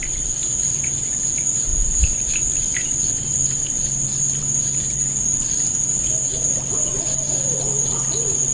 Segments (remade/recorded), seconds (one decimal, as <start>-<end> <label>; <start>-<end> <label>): 0.0-8.5 recorded